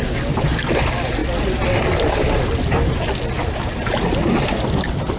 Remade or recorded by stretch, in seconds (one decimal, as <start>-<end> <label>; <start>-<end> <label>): 0.0-5.2 recorded